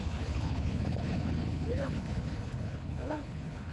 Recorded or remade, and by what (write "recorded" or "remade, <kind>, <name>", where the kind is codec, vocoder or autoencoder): remade, codec, HILCodec